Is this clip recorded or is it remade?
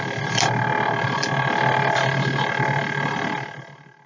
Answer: recorded